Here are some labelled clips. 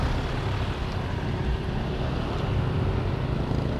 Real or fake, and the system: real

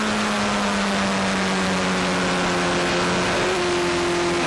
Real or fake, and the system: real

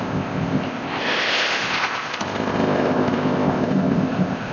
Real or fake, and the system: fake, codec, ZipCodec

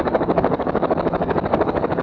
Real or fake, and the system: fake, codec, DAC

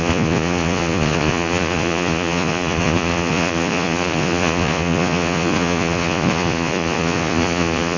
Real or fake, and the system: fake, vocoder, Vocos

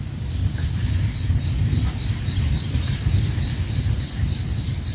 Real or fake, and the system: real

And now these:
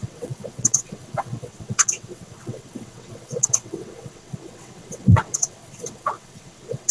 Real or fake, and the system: fake, vocoder, WaveNeXt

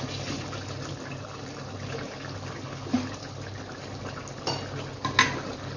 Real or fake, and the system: real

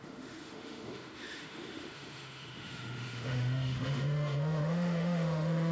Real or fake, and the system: fake, autoencoder, DAC-VAE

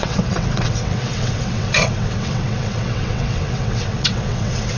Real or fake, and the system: fake, vocoder, WaveNeXt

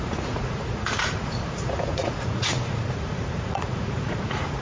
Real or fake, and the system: fake, vocoder, Vocos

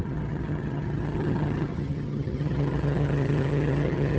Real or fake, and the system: fake, vocoder, HiFi-GAN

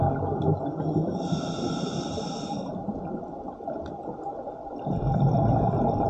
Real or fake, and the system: real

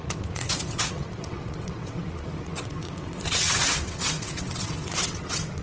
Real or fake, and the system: fake, vocoder, WaveNeXt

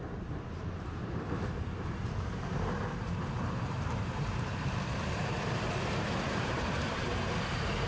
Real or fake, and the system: fake, vocoder, BigVGAN v2